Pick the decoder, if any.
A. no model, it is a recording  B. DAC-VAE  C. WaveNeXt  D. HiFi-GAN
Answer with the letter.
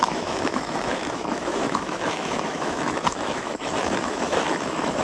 B